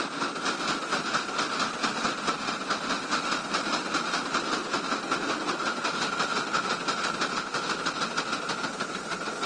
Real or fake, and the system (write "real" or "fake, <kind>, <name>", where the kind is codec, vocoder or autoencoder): real